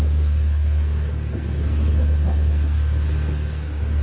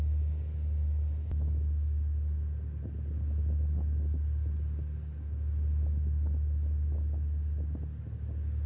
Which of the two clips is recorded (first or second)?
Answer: second